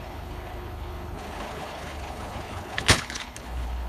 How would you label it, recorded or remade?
remade